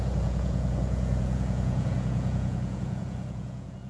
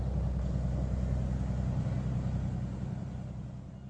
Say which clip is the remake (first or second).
first